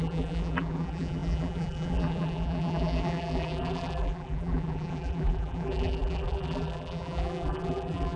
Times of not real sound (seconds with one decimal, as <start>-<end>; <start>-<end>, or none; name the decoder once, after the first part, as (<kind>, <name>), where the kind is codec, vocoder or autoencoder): 0.0-8.2 (vocoder, BigVGAN v2)